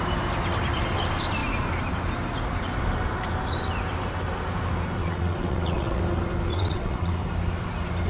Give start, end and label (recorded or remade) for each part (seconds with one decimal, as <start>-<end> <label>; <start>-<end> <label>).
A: 0.0-5.0 recorded; 5.0-6.0 remade; 6.0-6.5 recorded; 6.5-7.2 remade; 7.2-8.1 recorded

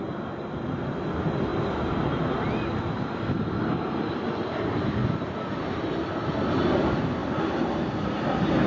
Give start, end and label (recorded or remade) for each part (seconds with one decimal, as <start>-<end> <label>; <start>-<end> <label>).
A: 0.0-8.7 recorded